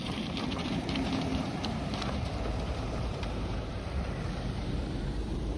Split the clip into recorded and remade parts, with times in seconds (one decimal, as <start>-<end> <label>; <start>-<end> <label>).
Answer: 0.0-5.6 remade